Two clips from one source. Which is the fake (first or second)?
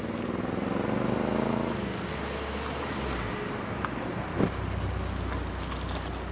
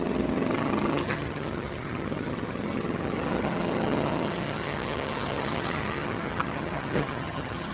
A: second